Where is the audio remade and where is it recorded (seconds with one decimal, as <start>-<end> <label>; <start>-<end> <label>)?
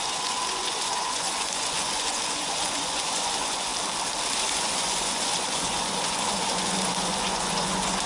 0.0-3.7 remade; 3.7-4.3 recorded; 4.3-8.1 remade